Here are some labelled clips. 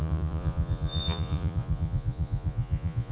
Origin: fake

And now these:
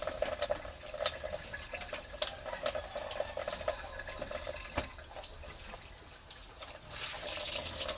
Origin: real